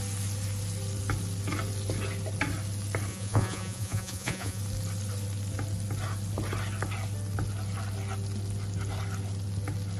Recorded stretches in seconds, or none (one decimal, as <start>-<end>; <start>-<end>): 0.0-3.1; 4.6-10.0